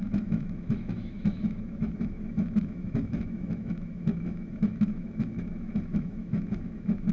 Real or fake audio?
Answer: fake